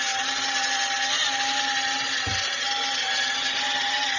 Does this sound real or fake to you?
real